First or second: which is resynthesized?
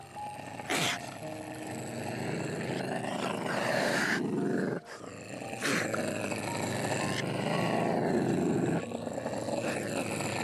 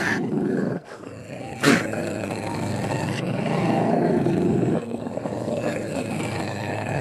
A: second